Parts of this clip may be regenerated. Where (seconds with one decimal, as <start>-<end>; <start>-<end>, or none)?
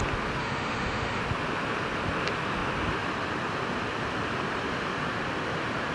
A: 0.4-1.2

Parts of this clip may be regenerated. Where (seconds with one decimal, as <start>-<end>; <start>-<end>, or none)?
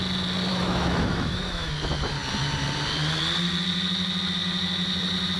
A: 0.5-1.7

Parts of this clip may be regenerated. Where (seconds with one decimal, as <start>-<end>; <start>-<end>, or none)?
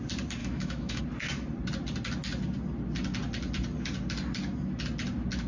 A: 0.4-1.0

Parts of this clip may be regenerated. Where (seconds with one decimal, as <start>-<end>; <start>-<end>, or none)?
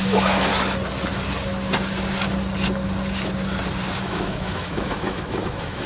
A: 0.0-0.5; 4.0-5.9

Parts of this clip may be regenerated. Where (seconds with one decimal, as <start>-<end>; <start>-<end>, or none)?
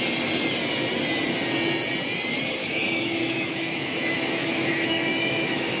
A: 2.6-5.8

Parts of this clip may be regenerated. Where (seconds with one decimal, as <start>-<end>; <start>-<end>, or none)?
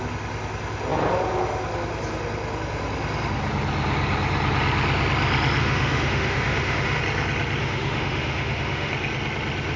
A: 5.6-7.0; 7.6-8.9